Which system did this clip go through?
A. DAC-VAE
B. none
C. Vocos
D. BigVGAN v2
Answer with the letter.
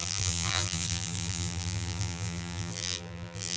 D